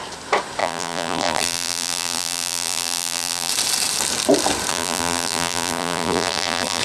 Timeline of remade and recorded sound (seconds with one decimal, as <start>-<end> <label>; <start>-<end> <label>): 0.0-0.6 recorded; 0.6-3.5 remade; 3.5-4.7 recorded; 4.7-6.8 remade